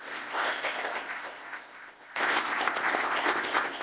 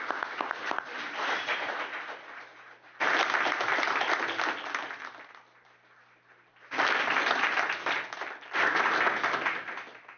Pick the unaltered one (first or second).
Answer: second